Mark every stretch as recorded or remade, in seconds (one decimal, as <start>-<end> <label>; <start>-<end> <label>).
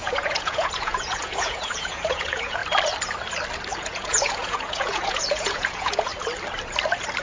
0.0-2.6 remade; 2.6-3.7 recorded; 3.7-6.1 remade; 6.1-7.2 recorded